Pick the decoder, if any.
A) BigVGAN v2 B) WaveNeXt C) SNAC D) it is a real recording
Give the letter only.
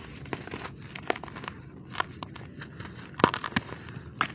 D